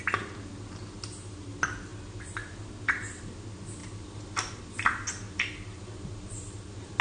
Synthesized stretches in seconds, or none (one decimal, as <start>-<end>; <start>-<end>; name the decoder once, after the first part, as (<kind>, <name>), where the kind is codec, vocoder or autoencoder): none